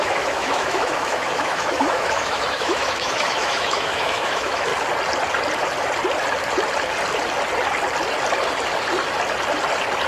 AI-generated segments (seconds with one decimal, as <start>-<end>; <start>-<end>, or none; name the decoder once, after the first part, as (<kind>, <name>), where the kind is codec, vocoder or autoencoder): 0.0-4.7 (autoencoder, DAC-VAE)